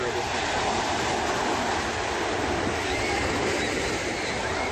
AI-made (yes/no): yes